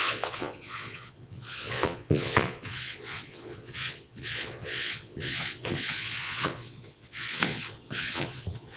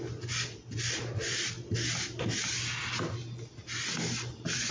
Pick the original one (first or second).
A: second